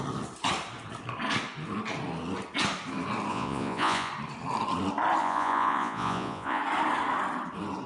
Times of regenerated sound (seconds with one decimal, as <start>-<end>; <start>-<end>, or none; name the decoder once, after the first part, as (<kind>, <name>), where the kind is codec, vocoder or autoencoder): 3.3-4.1 (vocoder, Vocos); 5.2-6.6